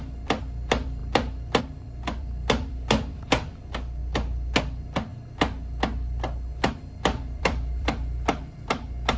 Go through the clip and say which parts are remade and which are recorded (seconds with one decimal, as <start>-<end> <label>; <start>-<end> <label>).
0.0-4.0 remade; 4.0-4.6 recorded; 4.6-5.1 remade; 5.1-6.7 recorded; 6.7-9.2 remade

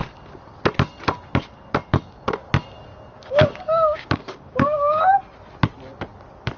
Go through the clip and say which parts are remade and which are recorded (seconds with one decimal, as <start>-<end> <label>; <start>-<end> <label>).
0.0-3.1 recorded; 3.1-5.0 remade; 5.0-6.6 recorded

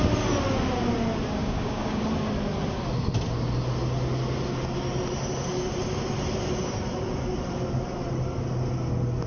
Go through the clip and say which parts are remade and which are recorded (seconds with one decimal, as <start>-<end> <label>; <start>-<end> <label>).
0.0-1.4 recorded; 1.4-2.0 remade; 2.0-9.3 recorded

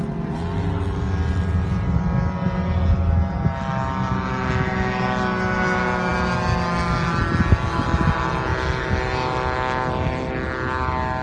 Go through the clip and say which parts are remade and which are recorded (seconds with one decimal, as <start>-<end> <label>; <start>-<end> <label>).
0.0-11.2 recorded

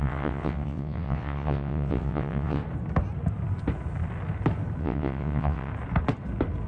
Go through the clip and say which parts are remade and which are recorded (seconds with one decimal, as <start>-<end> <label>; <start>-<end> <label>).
0.0-2.6 remade; 2.6-4.8 recorded; 4.8-5.7 remade; 5.7-6.7 recorded

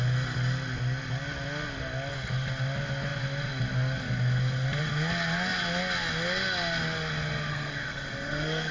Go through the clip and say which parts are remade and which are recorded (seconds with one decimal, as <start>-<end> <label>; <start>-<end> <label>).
0.0-7.5 recorded; 7.5-8.7 remade